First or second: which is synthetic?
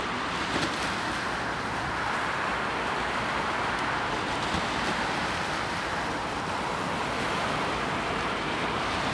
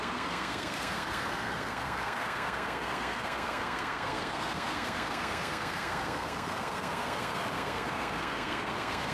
second